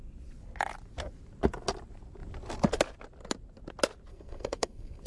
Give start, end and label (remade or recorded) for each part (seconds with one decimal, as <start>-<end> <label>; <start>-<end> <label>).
0.0-4.1 recorded; 4.1-5.1 remade

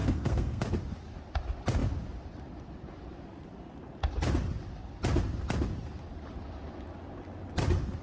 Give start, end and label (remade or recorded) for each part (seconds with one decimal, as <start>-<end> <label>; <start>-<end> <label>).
0.0-0.6 remade; 0.6-8.0 recorded